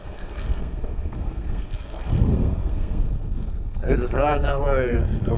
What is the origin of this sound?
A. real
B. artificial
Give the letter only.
B